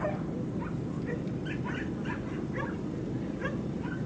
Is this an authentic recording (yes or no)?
yes